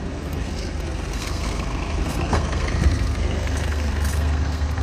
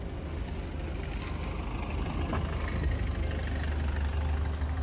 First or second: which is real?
second